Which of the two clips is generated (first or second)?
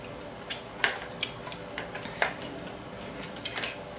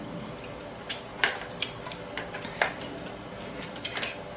second